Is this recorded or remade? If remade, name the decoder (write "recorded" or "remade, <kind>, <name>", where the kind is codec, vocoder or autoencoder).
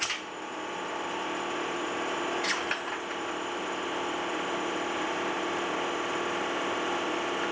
recorded